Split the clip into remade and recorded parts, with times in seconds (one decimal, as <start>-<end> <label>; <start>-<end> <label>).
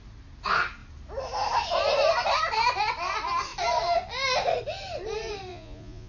0.0-5.5 recorded; 5.5-6.1 remade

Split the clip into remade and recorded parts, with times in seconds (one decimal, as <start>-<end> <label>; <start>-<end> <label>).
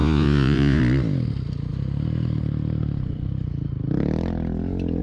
0.0-0.8 remade; 0.8-5.0 recorded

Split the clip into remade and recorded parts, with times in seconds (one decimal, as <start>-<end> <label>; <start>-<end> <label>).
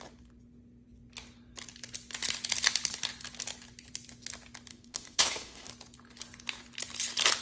0.0-4.7 recorded; 4.7-5.7 remade; 5.7-7.4 recorded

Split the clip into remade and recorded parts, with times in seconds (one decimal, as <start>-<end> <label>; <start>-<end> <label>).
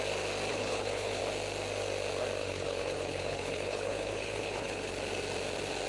0.0-0.5 recorded; 0.5-1.2 remade; 1.2-2.4 recorded; 2.4-4.9 remade; 4.9-5.9 recorded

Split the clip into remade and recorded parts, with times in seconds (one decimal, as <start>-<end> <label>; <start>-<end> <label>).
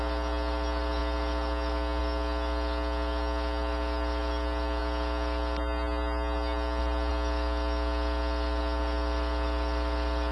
0.0-10.3 recorded